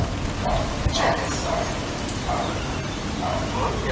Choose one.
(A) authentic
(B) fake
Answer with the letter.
A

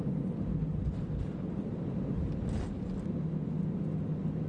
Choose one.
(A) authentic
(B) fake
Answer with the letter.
A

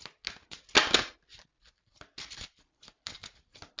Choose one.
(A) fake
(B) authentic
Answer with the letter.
B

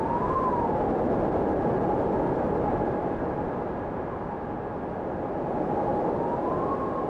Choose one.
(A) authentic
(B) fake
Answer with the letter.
A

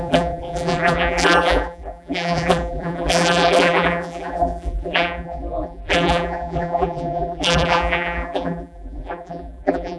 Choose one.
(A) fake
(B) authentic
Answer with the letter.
A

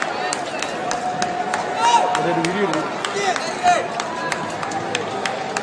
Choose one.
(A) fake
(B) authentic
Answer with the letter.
B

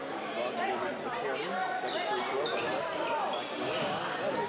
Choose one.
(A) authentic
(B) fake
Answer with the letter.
A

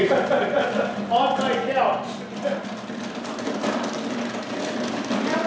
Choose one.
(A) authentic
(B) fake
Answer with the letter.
B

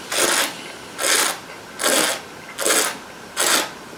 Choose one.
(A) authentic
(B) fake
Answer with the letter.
A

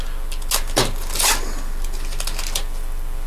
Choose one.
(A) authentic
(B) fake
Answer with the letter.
A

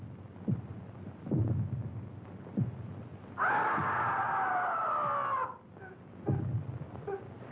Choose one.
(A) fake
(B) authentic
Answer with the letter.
B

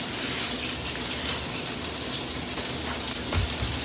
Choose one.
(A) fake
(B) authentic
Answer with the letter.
B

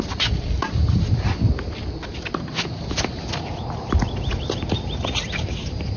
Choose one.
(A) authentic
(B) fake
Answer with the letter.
B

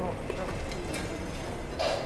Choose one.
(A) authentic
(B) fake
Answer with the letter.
A